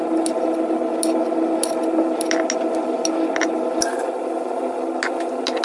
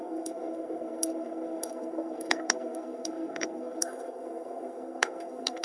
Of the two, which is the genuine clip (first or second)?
first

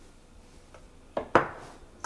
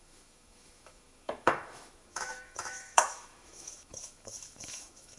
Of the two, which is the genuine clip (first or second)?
first